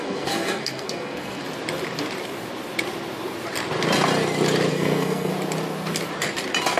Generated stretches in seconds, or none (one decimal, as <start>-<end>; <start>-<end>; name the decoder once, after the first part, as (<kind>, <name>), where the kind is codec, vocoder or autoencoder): 0.0-1.4 (codec, SNAC); 4.7-5.3